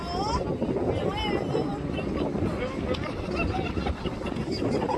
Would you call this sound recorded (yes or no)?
yes